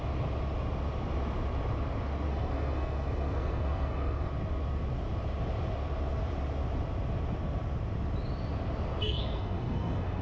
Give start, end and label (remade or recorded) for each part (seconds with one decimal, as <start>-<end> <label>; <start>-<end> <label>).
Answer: 0.0-2.3 recorded; 2.3-4.3 remade; 4.3-9.0 recorded; 9.0-10.2 remade